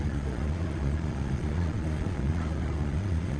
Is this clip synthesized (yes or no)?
yes